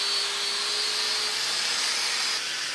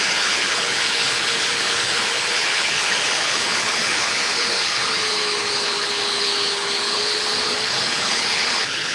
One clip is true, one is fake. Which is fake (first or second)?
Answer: second